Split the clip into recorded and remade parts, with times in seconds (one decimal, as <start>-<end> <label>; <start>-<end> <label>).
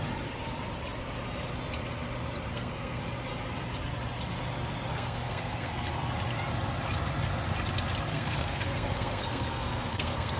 0.0-2.5 recorded; 2.5-3.0 remade; 3.0-4.9 recorded; 4.9-5.9 remade; 5.9-8.1 recorded; 8.1-10.4 remade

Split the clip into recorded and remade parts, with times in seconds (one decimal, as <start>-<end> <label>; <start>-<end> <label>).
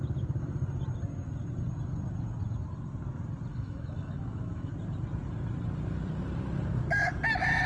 0.0-3.5 recorded; 3.5-4.7 remade; 4.7-7.7 recorded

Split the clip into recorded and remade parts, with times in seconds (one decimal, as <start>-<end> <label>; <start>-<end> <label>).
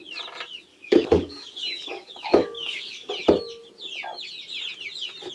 0.0-0.7 recorded; 0.7-3.1 remade; 3.1-5.3 recorded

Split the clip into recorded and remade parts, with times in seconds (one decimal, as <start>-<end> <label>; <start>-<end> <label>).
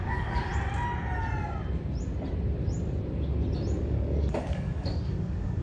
0.0-0.5 remade; 0.5-3.8 recorded; 3.8-5.6 remade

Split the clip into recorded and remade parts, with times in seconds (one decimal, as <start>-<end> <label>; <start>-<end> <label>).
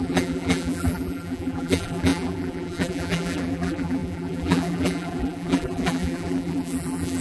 0.0-7.2 remade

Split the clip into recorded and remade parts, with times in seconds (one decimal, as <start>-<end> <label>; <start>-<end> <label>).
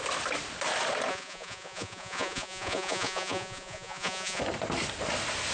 0.0-1.1 recorded; 1.1-4.4 remade; 4.4-5.5 recorded